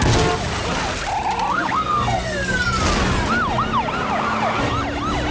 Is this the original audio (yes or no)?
yes